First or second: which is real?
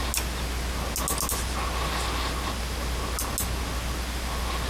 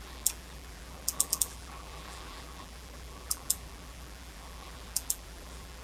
first